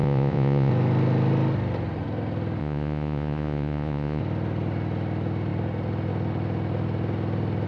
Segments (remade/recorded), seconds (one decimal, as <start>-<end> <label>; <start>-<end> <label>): 0.0-0.7 remade; 0.7-2.6 recorded; 2.6-4.2 remade; 4.2-7.7 recorded